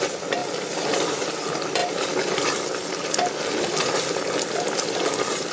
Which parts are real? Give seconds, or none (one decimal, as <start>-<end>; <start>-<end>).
0.0-0.4; 1.1-1.8; 4.1-5.5